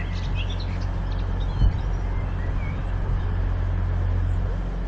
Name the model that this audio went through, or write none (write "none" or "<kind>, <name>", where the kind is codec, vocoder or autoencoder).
none